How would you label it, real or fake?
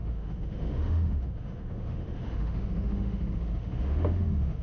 fake